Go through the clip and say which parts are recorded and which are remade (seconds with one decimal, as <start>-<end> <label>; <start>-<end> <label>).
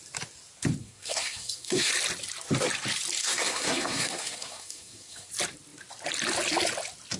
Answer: 0.0-0.8 recorded; 0.8-1.9 remade; 1.9-3.2 recorded; 3.2-5.3 remade; 5.3-7.2 recorded